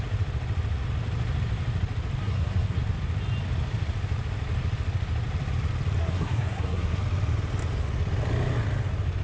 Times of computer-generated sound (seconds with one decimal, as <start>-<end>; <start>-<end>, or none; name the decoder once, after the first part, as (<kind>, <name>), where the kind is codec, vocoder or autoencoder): 2.2-2.8 (codec, SNAC); 6.0-7.0